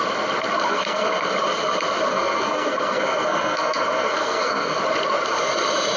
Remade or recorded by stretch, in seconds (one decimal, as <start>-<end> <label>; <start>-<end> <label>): 0.0-0.7 recorded; 0.7-1.3 remade; 1.3-2.1 recorded; 2.1-4.8 remade; 4.8-6.0 recorded